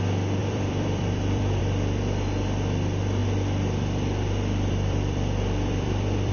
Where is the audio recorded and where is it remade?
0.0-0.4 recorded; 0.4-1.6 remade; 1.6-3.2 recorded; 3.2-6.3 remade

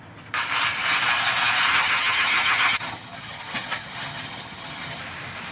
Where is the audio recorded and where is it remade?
0.0-1.7 recorded; 1.7-5.0 remade; 5.0-5.5 recorded

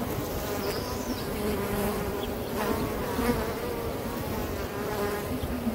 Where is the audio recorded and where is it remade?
0.0-5.7 recorded